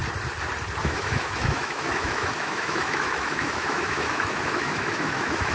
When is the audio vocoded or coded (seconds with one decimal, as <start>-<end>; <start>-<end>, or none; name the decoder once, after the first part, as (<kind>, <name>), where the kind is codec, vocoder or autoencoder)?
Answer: 0.8-5.5 (autoencoder, DAC-VAE)